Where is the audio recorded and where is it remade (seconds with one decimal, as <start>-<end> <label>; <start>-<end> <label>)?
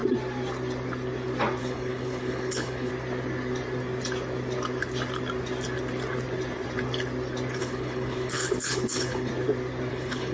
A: 0.0-1.6 recorded; 1.6-2.9 remade; 2.9-7.6 recorded; 7.6-9.3 remade; 9.3-9.9 recorded; 9.9-10.3 remade